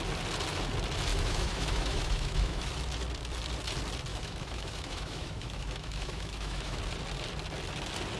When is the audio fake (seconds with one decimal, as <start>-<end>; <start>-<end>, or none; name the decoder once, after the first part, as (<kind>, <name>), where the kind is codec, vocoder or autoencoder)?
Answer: 1.1-2.7 (autoencoder, DAC-VAE); 4.1-6.8